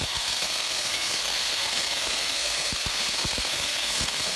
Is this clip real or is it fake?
fake